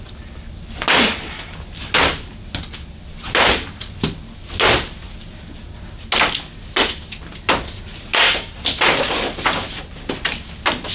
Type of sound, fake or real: real